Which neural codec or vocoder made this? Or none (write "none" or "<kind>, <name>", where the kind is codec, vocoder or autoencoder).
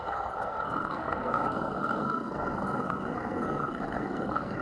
codec, SNAC